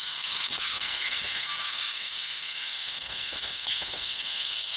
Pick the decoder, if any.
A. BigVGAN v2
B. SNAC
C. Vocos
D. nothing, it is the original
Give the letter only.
B